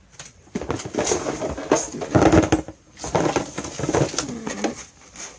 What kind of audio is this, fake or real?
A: real